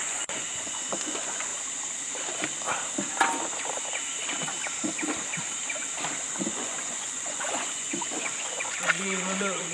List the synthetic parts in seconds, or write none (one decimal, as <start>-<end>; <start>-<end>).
0.0-1.5; 6.4-9.7

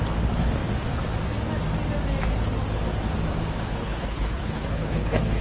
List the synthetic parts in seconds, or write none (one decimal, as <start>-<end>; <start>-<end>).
3.8-5.4

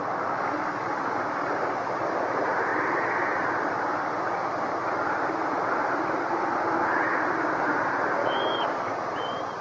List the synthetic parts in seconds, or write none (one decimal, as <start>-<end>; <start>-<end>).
8.2-8.9